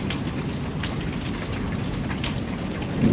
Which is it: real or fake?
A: real